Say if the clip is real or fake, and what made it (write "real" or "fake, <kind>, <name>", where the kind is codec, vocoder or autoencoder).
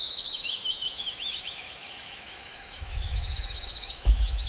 fake, autoencoder, DAC-VAE